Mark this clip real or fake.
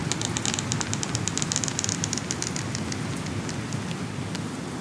real